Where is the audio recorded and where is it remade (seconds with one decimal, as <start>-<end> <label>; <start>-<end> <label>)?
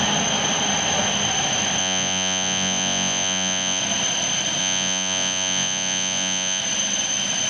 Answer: 0.0-1.8 recorded; 1.8-3.8 remade; 3.8-4.6 recorded; 4.6-6.6 remade; 6.6-7.5 recorded